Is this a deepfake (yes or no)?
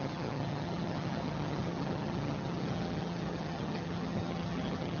yes